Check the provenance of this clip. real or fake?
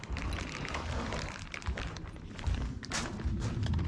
real